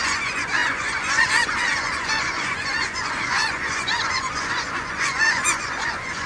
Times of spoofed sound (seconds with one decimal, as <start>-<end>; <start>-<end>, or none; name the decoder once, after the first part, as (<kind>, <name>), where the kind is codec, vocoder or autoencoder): 0.0-6.3 (vocoder, Vocos)